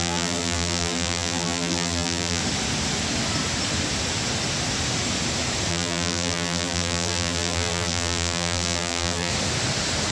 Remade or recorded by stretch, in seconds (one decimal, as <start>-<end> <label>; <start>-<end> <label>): 0.0-2.4 remade; 2.4-5.7 recorded; 5.7-9.3 remade; 9.3-10.1 recorded